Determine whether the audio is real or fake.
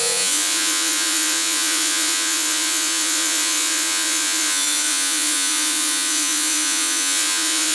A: fake